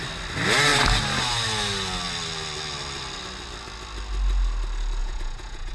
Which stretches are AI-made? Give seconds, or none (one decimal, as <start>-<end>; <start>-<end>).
5.0-5.7

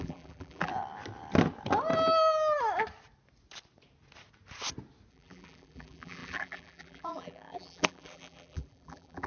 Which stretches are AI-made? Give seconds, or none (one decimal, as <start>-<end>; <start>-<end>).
0.0-0.7; 5.1-9.3

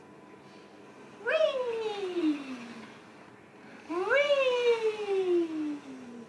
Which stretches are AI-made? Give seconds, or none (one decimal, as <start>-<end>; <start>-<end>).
none

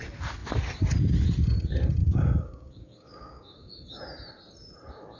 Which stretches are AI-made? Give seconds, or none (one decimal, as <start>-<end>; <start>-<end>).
2.0-4.0

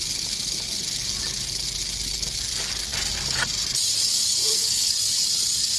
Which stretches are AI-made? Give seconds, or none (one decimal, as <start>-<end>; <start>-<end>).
4.4-4.9

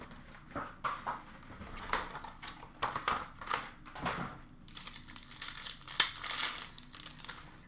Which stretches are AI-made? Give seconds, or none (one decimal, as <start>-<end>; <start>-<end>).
none